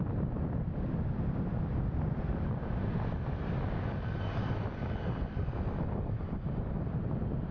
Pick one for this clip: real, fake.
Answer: real